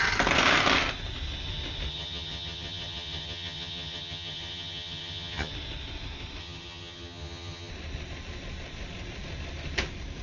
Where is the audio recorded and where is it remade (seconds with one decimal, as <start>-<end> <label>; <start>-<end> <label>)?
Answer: 0.0-1.9 recorded; 1.9-5.5 remade; 5.5-6.4 recorded; 6.4-7.7 remade; 7.7-10.2 recorded